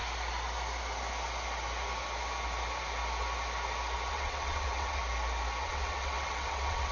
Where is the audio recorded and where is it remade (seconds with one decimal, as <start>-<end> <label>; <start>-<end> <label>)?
0.0-4.1 recorded; 4.1-5.0 remade; 5.0-5.6 recorded; 5.6-6.9 remade